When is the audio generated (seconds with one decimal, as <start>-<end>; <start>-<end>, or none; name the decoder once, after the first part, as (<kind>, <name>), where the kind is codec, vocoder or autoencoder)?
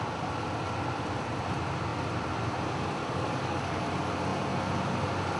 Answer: 3.0-3.8 (codec, DAC)